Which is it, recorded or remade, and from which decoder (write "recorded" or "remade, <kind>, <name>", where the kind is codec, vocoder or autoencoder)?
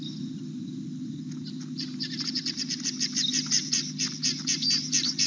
recorded